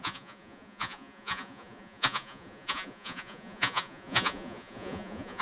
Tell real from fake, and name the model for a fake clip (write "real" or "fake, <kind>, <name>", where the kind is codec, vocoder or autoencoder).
fake, vocoder, Vocos